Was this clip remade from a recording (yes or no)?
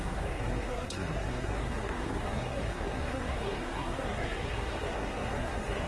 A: yes